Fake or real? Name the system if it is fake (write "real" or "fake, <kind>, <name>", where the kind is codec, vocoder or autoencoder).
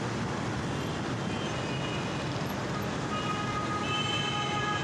real